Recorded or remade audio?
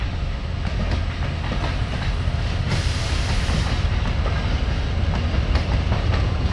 recorded